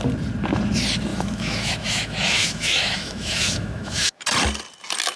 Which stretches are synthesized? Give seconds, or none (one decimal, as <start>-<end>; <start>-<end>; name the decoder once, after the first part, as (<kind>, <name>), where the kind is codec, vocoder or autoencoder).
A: 1.1-4.2 (autoencoder, DAC-VAE)